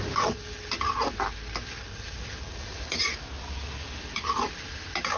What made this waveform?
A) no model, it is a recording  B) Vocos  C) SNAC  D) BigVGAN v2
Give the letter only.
A